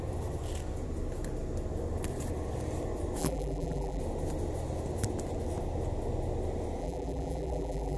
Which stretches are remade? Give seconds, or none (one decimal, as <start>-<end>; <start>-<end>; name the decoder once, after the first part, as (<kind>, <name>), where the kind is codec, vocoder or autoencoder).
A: 3.2-4.0 (vocoder, BigVGAN v2); 6.8-8.0